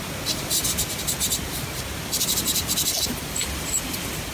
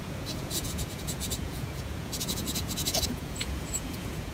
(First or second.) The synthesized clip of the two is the second